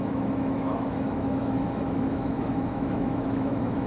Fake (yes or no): yes